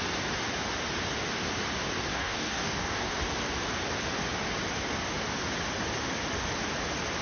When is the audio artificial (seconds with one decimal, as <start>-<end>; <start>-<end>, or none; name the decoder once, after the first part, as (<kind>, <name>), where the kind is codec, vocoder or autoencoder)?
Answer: 2.1-3.1 (codec, DAC)